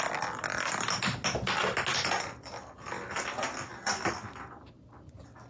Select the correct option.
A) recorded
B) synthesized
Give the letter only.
A